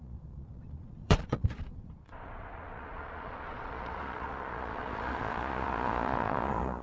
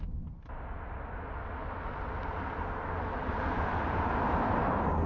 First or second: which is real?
second